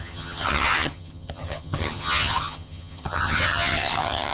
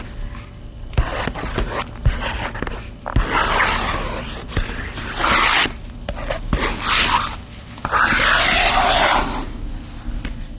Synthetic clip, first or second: first